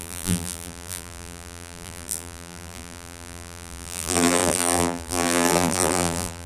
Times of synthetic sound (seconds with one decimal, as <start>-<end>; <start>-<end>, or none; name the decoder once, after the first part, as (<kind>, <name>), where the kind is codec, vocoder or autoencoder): 0.0-6.5 (vocoder, BigVGAN v2)